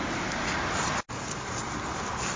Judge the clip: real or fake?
real